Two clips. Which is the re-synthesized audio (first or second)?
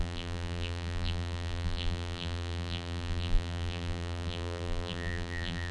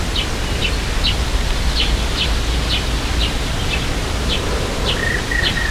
first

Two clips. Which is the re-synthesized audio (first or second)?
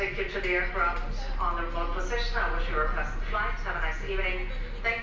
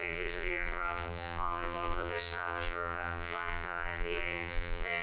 second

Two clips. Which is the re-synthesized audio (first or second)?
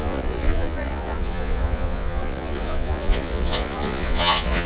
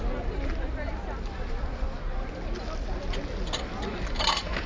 first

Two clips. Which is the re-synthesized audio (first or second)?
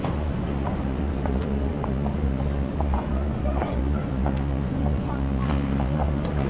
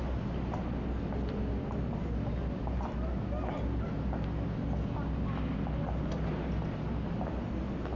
first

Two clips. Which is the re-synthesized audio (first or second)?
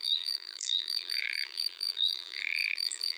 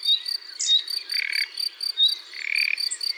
first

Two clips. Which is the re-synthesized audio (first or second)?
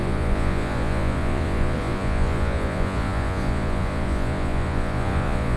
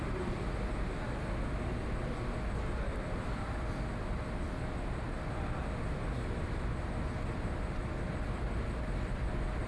first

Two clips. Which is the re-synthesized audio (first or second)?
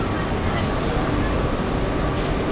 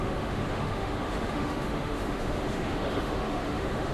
second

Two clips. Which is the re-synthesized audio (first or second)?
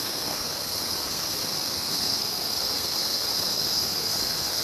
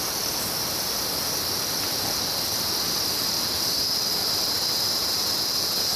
first